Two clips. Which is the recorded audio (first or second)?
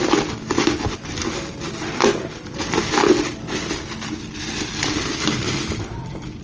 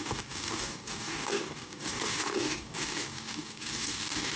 first